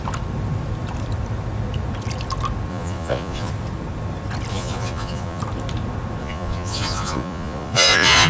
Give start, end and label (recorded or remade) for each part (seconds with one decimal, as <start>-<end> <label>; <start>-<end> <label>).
0.0-2.7 recorded; 2.7-3.5 remade; 3.5-4.5 recorded; 4.5-5.4 remade; 5.4-6.2 recorded; 6.2-8.3 remade